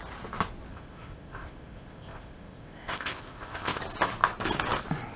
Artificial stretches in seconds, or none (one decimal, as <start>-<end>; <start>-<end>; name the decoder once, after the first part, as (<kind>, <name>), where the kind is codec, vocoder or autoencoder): 0.7-3.8 (codec, ZipCodec)